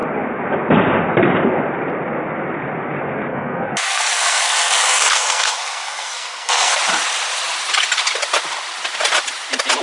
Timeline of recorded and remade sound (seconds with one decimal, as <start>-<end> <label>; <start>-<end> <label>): 0.0-3.3 recorded; 3.3-6.8 remade; 6.8-9.8 recorded